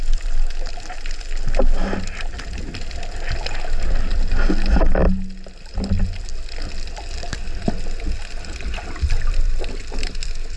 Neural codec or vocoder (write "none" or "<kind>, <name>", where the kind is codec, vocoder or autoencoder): none